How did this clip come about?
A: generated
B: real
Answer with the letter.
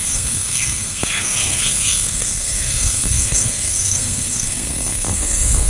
A